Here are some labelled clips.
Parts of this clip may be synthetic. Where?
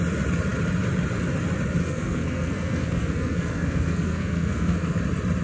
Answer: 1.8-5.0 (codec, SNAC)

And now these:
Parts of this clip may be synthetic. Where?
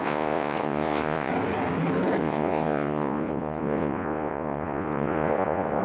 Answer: 0.0-1.3 (vocoder, Vocos); 2.2-5.8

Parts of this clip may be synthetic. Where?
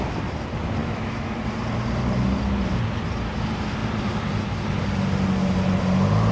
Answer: 0.8-1.4 (autoencoder, DAC-VAE)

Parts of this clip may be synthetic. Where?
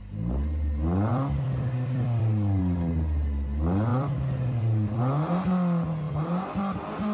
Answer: 1.1-2.6 (vocoder, BigVGAN v2); 3.9-5.0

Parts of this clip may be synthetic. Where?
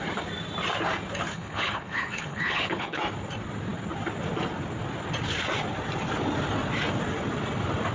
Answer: 1.3-3.0 (codec, HILCodec)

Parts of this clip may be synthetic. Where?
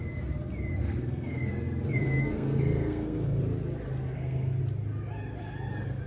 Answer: 0.7-1.5 (codec, SNAC); 2.2-3.4; 4.1-4.6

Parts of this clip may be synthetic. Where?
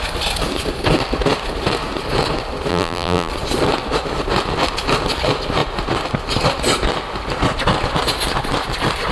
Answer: 2.7-3.3 (vocoder, BigVGAN v2)